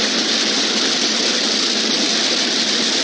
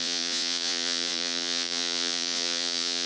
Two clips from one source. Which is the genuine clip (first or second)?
first